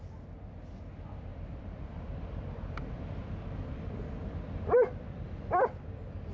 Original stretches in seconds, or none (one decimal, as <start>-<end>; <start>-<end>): 0.0-1.3; 5.1-6.3